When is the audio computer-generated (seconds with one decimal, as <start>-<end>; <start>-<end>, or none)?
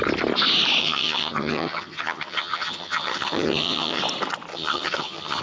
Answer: 0.8-4.0; 4.5-5.4